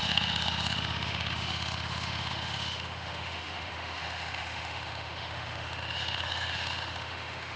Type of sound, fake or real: fake